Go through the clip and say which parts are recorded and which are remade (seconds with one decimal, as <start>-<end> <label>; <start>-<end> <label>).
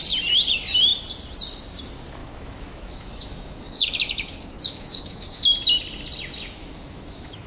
0.0-2.2 recorded; 2.2-5.4 remade; 5.4-6.6 recorded; 6.6-7.5 remade